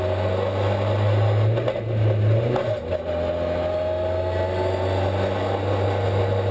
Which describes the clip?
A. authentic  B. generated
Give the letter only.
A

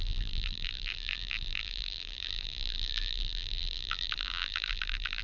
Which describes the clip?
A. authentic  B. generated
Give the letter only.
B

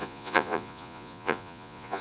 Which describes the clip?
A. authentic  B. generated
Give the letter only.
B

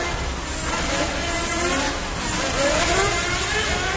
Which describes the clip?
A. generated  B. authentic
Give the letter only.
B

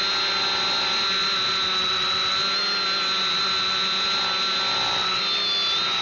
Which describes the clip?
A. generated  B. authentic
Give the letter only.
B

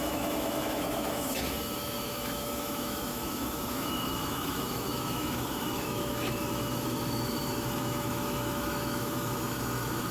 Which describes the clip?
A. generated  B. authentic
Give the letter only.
A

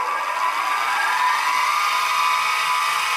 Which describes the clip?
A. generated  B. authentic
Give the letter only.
B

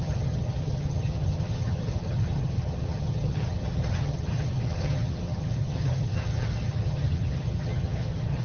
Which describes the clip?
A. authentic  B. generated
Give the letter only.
B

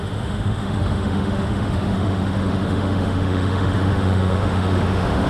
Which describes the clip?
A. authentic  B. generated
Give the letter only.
B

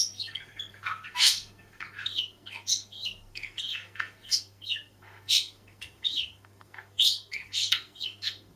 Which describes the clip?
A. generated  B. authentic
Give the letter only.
A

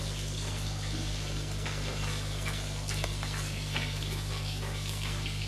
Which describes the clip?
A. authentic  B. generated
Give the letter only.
B